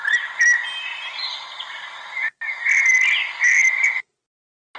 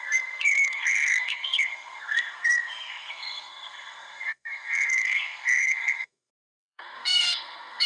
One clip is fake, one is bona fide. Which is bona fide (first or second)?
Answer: first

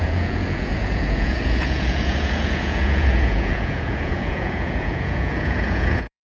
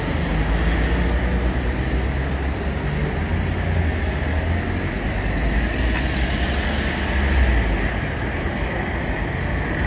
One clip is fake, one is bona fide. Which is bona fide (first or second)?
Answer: second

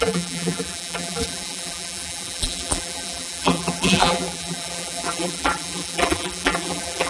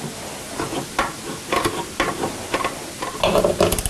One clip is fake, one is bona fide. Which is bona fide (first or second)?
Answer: second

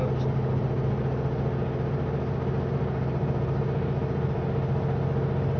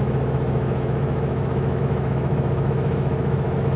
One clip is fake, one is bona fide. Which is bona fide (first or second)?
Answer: first